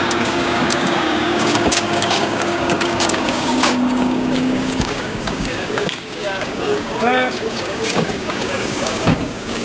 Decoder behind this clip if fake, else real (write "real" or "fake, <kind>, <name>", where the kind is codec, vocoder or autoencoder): fake, codec, DAC